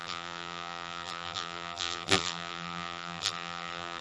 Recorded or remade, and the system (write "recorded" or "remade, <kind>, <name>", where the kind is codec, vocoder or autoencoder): remade, vocoder, BigVGAN v2